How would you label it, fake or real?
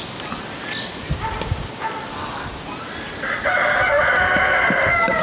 real